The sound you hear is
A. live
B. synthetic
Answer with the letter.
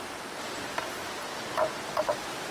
A